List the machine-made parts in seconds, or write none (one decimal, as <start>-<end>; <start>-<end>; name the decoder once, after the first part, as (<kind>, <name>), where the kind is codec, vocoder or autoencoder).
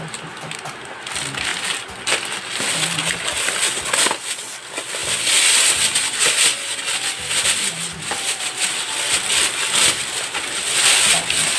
none